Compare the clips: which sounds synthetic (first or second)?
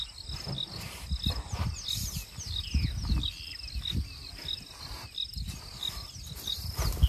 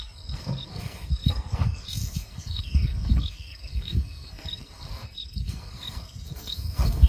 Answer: second